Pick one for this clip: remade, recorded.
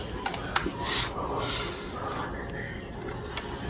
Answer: recorded